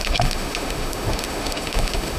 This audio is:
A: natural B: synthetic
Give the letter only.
B